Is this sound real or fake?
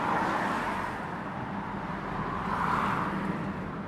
real